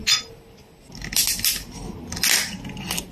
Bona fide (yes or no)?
yes